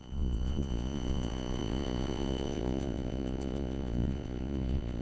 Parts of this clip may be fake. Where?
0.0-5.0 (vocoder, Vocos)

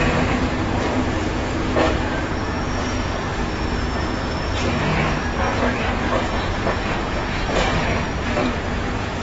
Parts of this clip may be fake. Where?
0.0-4.9 (vocoder, Vocos); 5.5-9.2